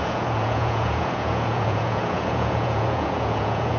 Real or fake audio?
fake